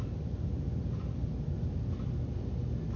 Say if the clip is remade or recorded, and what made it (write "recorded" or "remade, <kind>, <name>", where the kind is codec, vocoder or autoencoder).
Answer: recorded